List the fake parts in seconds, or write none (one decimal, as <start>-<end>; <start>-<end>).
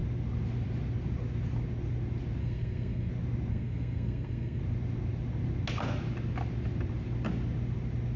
2.4-3.1; 3.5-4.6